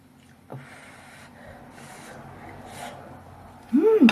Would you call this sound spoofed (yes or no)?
no